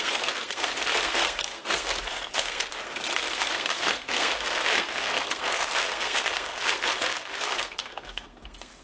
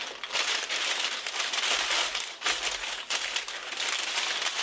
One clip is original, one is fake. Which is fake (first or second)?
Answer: first